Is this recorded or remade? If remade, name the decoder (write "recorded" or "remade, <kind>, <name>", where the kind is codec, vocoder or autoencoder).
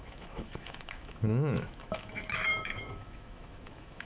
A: remade, autoencoder, DAC-VAE